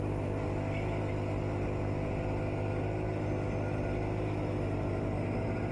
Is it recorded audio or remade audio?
recorded